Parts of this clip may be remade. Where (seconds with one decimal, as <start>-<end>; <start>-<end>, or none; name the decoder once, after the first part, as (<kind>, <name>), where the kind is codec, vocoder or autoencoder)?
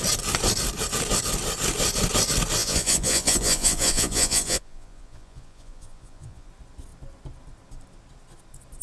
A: 2.6-6.5 (vocoder, Vocos)